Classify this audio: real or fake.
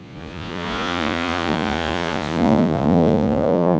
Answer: fake